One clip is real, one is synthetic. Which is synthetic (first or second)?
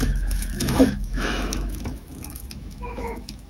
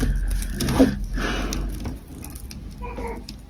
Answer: first